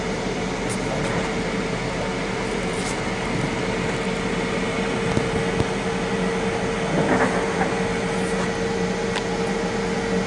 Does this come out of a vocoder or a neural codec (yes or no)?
no